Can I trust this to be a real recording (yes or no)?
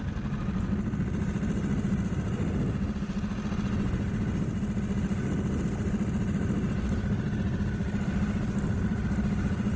yes